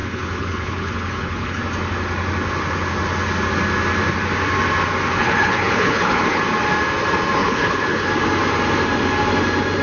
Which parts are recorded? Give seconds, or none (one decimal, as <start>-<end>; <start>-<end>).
1.6-5.2; 6.4-7.4; 8.1-9.8